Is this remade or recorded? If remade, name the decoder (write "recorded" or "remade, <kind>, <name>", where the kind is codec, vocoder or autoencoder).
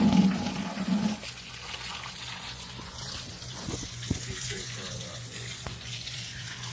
remade, vocoder, Vocos